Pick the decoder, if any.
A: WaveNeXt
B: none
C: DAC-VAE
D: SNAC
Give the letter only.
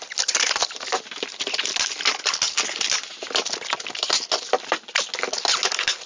B